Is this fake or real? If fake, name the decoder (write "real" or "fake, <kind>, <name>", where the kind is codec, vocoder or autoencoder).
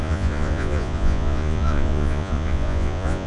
fake, vocoder, Vocos